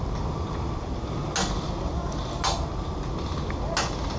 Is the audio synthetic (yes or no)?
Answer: no